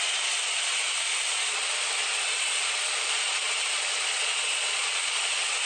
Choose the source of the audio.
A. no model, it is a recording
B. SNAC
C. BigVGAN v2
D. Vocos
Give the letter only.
D